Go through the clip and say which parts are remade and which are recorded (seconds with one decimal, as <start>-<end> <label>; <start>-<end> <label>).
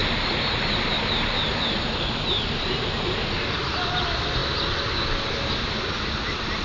0.0-6.6 recorded